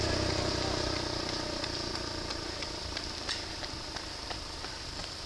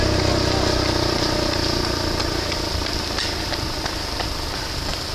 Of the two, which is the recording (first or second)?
second